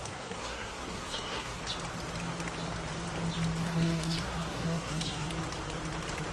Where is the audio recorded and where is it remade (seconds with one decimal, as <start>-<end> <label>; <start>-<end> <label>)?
0.0-1.6 remade; 1.6-3.6 recorded; 3.6-5.3 remade; 5.3-6.3 recorded